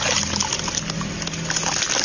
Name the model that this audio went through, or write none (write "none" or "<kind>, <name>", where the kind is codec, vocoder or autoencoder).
none